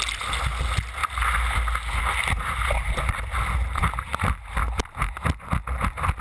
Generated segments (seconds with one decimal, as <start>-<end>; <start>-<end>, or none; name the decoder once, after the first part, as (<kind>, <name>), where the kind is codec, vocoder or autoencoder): none